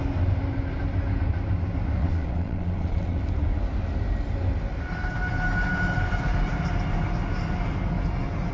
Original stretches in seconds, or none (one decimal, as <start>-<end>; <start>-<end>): 0.0-2.0; 3.2-8.5